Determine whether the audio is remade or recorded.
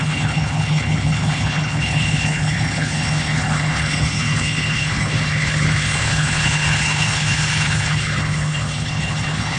remade